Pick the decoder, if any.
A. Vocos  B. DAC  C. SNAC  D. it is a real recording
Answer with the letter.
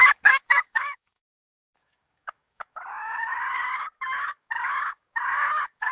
B